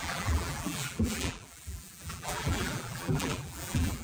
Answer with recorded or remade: remade